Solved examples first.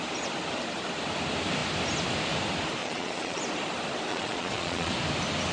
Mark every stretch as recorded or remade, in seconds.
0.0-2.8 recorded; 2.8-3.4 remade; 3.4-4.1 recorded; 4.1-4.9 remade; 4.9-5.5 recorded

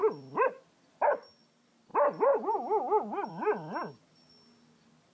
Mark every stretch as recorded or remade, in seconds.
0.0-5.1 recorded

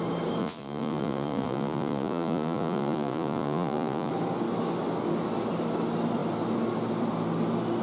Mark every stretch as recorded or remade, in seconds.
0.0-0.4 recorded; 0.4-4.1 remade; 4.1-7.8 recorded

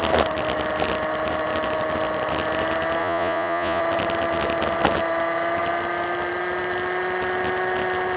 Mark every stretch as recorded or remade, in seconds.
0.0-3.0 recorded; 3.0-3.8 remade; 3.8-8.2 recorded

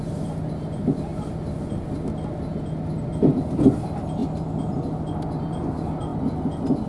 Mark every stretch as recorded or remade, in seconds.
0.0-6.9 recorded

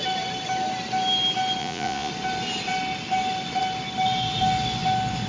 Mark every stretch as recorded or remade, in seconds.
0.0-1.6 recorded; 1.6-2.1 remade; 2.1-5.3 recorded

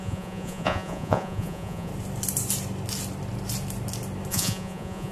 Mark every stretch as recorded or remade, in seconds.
0.0-1.9 remade; 1.9-4.3 recorded; 4.3-5.1 remade